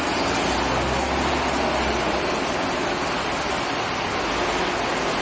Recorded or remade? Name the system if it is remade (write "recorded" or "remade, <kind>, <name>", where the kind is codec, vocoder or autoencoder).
recorded